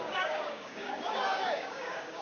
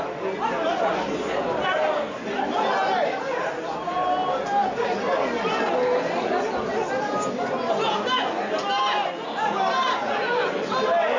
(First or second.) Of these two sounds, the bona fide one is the second